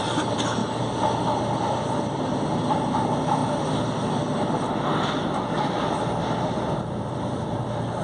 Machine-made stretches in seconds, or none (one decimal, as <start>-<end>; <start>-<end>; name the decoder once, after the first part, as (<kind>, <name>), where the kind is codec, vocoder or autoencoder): 0.0-0.6 (vocoder, BigVGAN v2); 2.0-3.4; 6.2-8.0